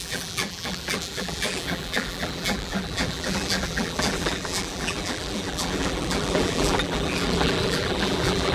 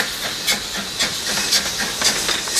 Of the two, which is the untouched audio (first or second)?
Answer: second